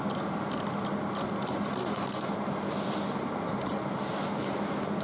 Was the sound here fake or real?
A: real